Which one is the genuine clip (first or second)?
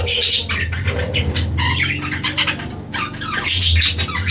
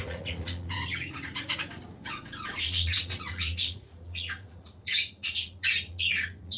first